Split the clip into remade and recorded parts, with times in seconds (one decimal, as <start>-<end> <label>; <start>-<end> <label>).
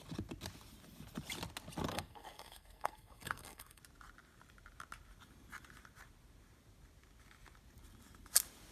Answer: 0.0-1.9 recorded; 1.9-3.8 remade; 3.8-8.7 recorded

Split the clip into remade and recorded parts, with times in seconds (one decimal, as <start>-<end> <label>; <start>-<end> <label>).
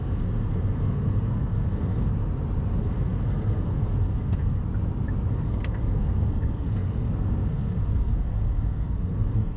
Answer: 0.0-2.1 remade; 2.1-2.8 recorded; 2.8-4.6 remade; 4.6-5.3 recorded; 5.3-9.6 remade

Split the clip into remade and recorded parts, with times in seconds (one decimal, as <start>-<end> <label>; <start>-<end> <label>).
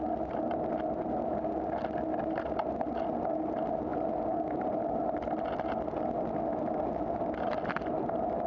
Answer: 0.0-8.5 recorded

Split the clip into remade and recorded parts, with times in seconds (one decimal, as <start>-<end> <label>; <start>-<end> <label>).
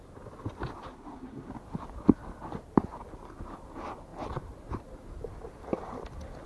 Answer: 0.0-0.9 recorded; 0.9-1.5 remade; 1.5-6.5 recorded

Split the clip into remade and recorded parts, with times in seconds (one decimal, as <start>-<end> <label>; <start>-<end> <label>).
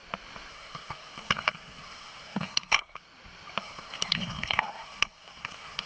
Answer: 0.0-0.5 recorded; 0.5-3.0 remade; 3.0-3.6 recorded; 3.6-5.9 remade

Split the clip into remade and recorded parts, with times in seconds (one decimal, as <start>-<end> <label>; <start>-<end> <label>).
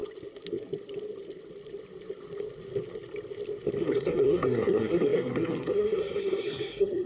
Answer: 0.0-3.8 recorded; 3.8-7.1 remade